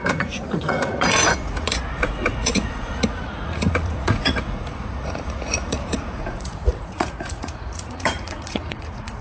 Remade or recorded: remade